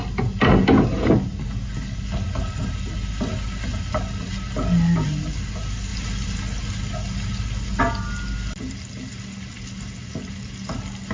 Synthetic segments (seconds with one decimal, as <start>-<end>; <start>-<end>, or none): none